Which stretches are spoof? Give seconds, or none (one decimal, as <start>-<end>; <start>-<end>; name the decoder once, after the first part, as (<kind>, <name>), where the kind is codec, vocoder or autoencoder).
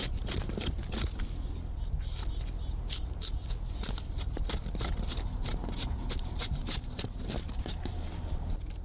0.0-0.8 (vocoder, BigVGAN v2); 4.9-5.6; 6.1-8.8